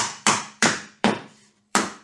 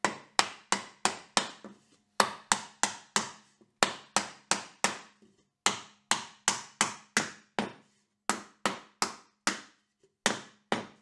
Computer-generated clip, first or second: first